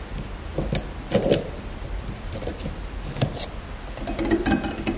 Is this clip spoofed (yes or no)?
no